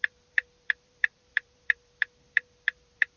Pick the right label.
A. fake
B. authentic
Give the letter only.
A